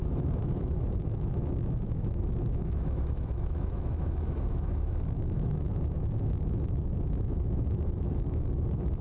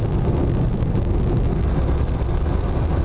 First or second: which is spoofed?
first